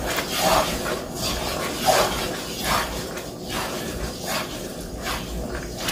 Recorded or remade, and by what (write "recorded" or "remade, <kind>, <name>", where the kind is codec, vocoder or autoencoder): recorded